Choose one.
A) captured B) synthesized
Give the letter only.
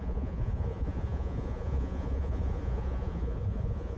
B